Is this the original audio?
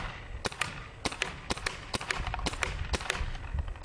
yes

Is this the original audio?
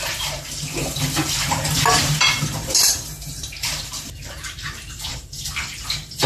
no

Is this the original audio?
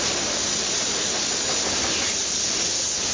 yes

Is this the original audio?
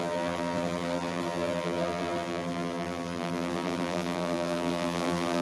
no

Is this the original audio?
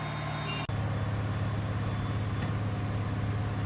yes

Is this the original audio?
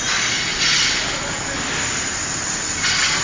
yes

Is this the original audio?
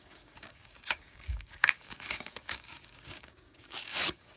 no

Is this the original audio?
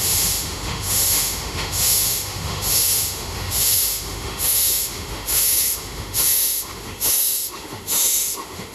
no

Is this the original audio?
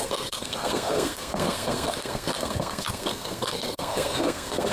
no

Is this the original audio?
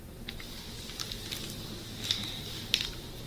yes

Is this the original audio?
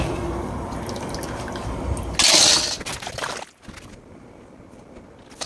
yes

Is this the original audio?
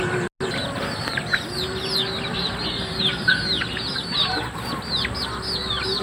yes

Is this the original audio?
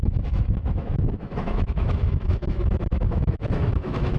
no